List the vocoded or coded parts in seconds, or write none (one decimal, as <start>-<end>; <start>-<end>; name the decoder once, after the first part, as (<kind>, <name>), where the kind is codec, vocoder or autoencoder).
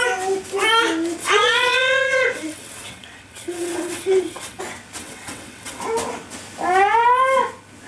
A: 1.2-4.6 (vocoder, WaveNeXt); 5.0-5.8